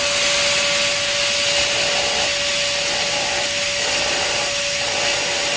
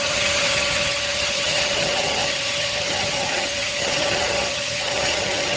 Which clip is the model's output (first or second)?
second